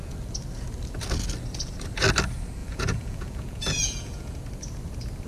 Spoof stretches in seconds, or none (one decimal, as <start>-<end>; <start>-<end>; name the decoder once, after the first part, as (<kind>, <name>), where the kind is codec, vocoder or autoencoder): 2.6-4.4 (vocoder, Vocos)